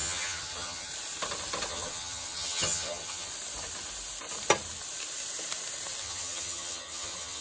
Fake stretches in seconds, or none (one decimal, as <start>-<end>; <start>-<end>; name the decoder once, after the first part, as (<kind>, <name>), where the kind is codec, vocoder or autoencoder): 0.0-0.9 (vocoder, HiFi-GAN); 1.7-3.3; 6.0-7.4